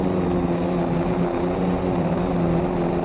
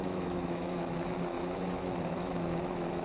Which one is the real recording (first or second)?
first